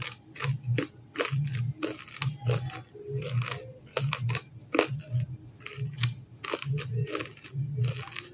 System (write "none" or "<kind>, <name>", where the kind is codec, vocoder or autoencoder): none